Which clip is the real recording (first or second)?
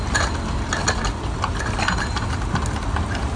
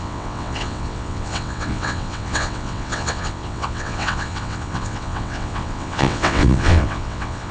first